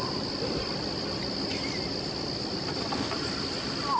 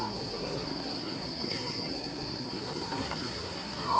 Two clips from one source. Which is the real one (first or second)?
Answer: first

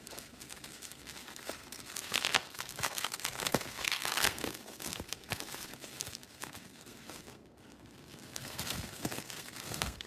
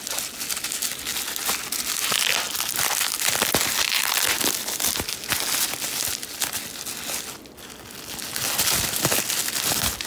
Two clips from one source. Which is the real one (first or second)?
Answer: second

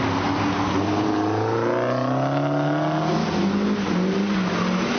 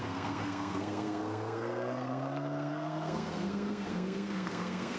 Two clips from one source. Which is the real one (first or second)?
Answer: first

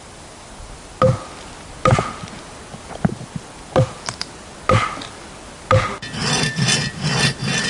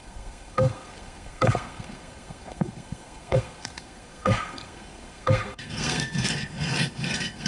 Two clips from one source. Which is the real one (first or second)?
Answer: first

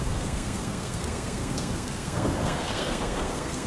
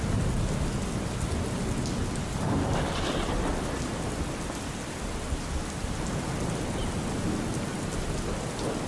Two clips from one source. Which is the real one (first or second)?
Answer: second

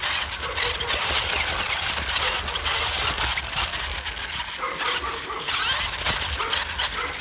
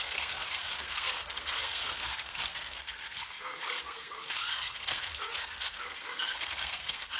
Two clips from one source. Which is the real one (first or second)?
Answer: first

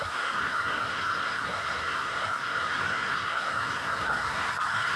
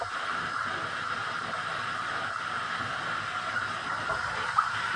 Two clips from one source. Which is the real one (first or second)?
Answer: second